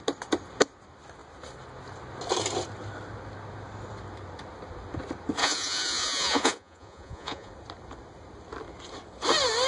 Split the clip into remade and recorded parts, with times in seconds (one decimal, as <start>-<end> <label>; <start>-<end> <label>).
0.0-5.4 recorded; 5.4-7.5 remade; 7.5-9.7 recorded